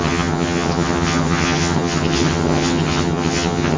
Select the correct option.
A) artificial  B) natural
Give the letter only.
A